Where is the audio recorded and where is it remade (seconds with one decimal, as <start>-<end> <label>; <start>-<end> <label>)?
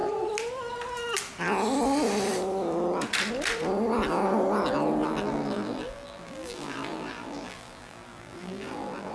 0.0-5.0 recorded; 5.0-9.1 remade